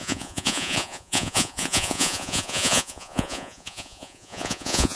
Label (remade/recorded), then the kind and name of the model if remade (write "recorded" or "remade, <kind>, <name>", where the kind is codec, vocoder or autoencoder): remade, vocoder, Vocos